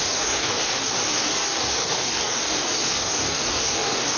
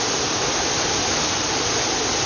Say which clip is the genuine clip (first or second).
second